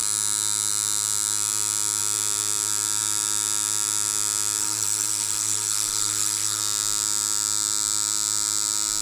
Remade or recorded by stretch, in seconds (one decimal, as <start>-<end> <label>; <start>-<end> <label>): 0.0-4.6 recorded; 4.6-6.6 remade; 6.6-9.0 recorded